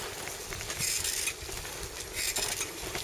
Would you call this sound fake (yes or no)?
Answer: no